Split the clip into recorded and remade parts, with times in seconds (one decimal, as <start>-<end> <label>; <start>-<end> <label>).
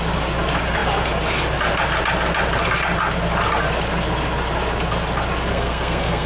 0.0-5.5 recorded; 5.5-6.3 remade